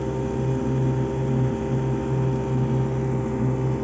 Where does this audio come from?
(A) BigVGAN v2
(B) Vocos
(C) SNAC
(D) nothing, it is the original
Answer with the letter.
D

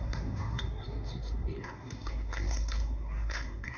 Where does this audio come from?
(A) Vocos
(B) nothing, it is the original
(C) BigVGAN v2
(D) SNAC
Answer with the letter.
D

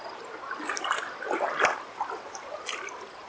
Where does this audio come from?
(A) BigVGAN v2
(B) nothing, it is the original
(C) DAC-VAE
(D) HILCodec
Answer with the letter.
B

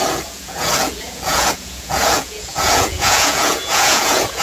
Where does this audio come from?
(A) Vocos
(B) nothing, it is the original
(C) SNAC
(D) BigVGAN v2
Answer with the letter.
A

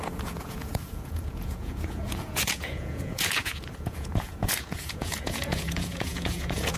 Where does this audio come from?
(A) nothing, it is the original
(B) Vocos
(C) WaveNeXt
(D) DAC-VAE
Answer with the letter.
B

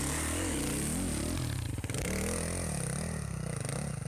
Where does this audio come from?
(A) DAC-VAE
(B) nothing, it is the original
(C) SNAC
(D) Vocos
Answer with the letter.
B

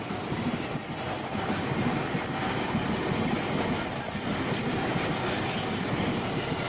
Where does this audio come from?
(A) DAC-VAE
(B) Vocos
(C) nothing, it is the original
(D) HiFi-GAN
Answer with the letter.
C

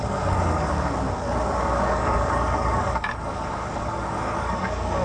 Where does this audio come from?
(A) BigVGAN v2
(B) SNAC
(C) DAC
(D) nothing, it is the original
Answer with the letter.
C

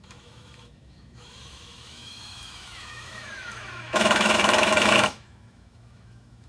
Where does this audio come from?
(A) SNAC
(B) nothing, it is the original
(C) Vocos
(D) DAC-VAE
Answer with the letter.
D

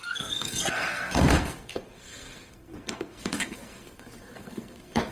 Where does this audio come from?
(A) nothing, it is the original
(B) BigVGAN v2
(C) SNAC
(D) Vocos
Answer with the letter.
C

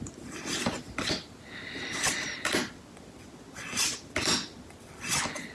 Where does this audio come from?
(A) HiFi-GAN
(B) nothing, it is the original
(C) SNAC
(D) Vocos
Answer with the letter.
B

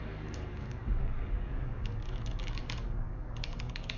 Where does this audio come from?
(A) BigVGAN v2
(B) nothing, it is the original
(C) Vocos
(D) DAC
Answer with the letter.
D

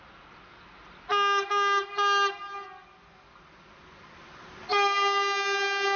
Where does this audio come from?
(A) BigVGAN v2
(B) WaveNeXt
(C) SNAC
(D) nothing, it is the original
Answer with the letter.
D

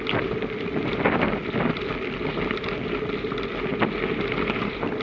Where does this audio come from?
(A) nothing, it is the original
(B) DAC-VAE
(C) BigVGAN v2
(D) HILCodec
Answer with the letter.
A